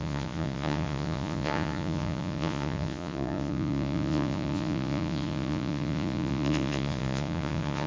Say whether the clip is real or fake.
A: fake